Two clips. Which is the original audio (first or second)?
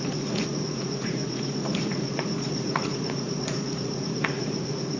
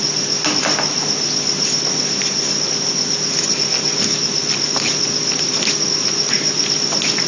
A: second